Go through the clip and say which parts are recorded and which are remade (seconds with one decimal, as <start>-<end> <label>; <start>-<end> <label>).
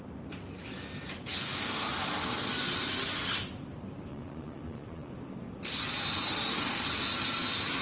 0.0-4.1 recorded; 4.1-5.1 remade; 5.1-7.8 recorded